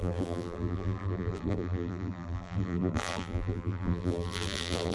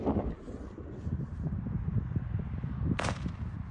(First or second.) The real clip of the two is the second